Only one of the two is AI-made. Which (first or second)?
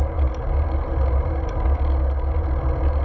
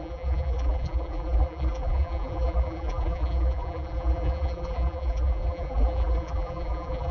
second